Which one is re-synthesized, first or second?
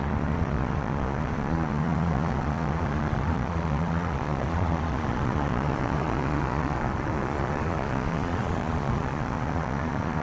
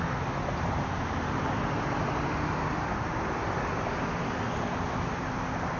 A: first